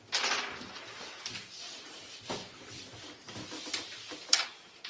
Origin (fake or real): fake